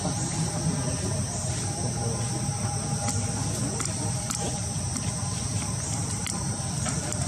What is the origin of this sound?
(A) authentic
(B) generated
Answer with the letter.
A